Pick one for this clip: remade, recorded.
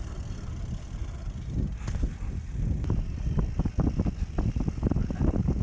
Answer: recorded